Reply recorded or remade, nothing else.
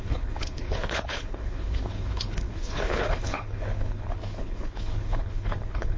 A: remade